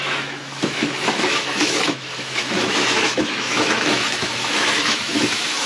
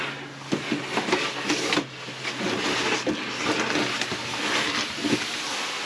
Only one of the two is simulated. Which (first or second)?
first